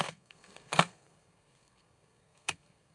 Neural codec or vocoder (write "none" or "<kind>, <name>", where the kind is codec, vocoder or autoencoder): codec, SNAC